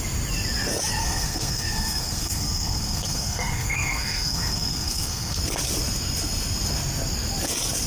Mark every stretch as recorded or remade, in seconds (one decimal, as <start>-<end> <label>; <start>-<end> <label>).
0.0-1.0 recorded; 1.0-5.4 remade; 5.4-7.9 recorded